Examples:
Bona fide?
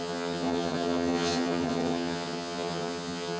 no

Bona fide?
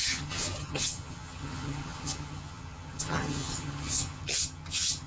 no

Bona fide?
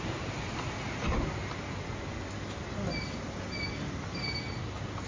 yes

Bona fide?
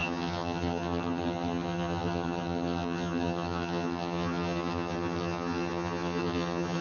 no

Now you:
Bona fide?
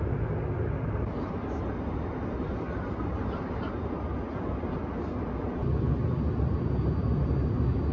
yes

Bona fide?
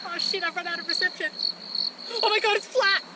yes